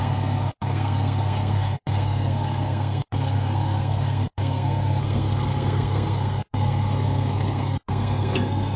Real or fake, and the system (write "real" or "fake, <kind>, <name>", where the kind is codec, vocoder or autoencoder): fake, codec, SNAC